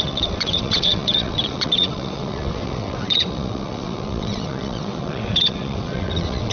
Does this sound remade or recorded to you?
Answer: remade